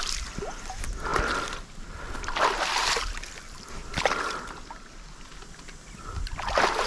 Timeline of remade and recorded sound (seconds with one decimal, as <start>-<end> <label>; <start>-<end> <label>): 0.0-6.9 recorded